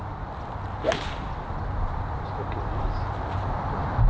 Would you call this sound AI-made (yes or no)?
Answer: no